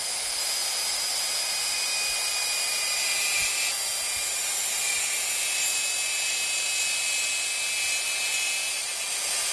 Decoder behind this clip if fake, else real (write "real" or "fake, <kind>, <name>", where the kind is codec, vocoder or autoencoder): real